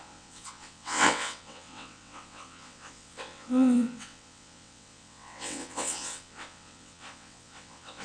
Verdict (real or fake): fake